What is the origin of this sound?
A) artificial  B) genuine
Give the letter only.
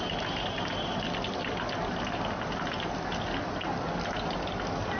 B